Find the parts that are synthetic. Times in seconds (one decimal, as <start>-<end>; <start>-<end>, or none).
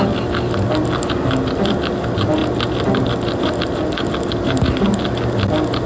none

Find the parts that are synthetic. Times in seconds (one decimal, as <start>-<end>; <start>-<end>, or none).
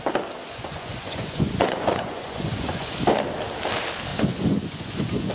0.4-3.0; 4.1-5.3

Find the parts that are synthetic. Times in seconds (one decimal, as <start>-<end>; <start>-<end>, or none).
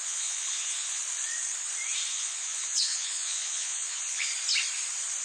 0.0-1.0; 2.1-4.3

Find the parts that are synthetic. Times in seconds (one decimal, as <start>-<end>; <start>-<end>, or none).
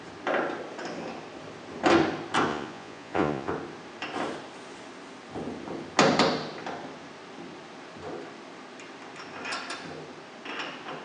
2.5-3.5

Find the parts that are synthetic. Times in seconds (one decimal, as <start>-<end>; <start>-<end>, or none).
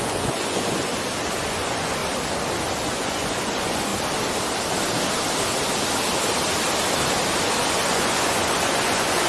0.0-0.9; 1.5-2.0; 2.9-3.9; 7.7-9.3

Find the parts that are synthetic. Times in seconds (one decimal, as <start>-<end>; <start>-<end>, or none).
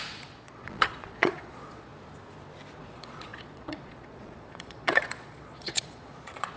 0.0-1.9; 2.8-6.6